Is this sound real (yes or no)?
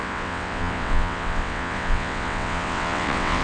no